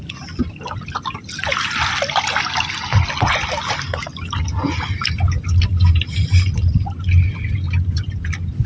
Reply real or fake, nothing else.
real